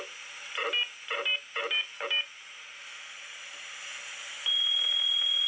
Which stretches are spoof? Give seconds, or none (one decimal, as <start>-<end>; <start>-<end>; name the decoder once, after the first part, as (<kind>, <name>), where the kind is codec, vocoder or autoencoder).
none